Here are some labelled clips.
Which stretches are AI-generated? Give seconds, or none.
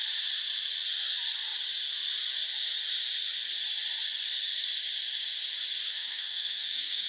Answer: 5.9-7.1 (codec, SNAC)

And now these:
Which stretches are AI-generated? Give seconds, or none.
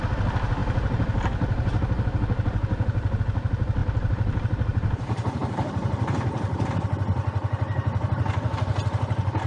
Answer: 0.6-3.2 (vocoder, BigVGAN v2); 3.8-6.7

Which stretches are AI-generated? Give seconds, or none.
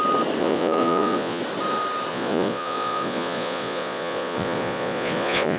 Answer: 0.4-1.4 (vocoder, Vocos); 2.1-5.6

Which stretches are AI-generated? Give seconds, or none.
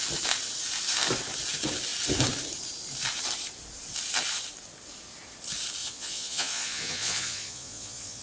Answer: 5.8-8.2 (vocoder, Vocos)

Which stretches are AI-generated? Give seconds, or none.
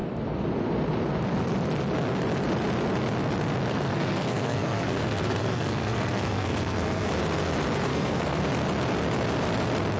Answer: 3.7-7.1 (codec, SNAC); 7.9-8.4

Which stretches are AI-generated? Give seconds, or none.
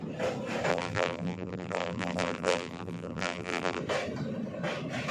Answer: 0.7-3.8 (vocoder, BigVGAN v2)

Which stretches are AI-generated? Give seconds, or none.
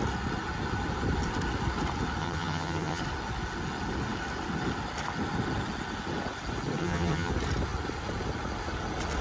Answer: 2.2-3.0 (vocoder, HiFi-GAN); 6.8-7.3